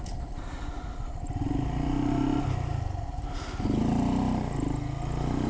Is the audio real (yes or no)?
yes